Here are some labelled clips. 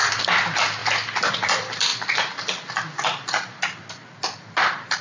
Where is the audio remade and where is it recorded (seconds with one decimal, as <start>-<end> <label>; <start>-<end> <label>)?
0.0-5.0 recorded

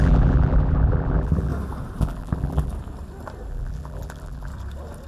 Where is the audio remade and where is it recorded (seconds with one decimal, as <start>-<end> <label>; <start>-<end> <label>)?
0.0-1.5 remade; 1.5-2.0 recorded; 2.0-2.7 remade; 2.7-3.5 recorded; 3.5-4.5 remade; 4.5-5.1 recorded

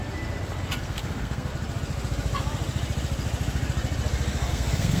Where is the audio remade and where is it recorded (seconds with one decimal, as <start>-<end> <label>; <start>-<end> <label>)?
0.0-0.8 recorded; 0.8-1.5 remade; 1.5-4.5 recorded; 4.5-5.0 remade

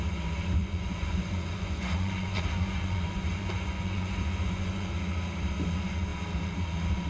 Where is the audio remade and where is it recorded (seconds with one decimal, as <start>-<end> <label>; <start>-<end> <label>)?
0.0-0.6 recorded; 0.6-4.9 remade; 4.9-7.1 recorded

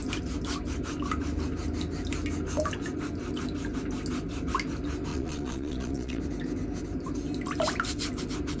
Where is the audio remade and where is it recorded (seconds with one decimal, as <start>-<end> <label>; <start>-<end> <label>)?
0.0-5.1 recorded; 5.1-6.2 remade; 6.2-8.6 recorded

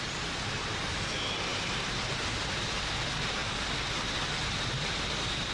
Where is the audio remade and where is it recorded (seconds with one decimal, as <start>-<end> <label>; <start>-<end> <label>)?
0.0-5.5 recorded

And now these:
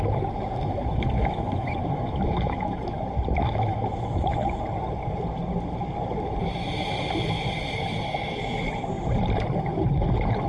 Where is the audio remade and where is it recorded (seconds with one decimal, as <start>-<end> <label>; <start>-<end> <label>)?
0.0-0.6 recorded; 0.6-3.0 remade; 3.0-3.4 recorded; 3.4-4.6 remade; 4.6-10.5 recorded

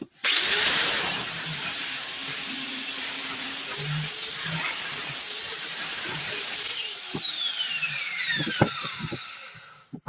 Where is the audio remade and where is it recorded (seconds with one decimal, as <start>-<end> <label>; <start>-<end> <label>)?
0.0-10.1 remade